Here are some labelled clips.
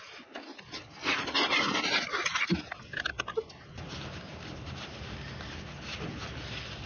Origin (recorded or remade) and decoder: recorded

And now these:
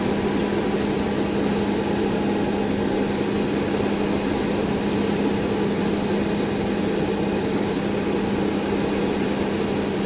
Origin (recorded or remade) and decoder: recorded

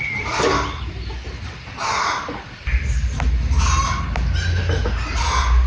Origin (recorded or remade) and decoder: recorded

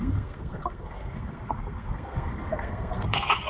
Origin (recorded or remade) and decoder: remade, codec, SNAC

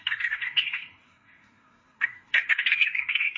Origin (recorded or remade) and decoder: remade, codec, SNAC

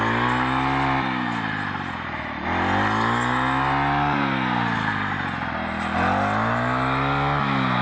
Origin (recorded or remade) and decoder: recorded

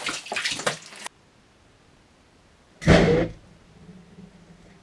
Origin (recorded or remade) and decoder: recorded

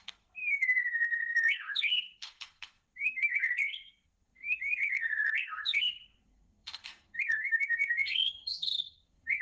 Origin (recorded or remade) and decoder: remade, codec, SNAC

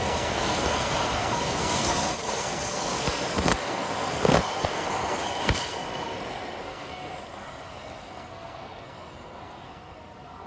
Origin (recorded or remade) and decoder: remade, codec, SNAC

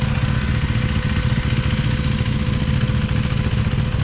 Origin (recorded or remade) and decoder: recorded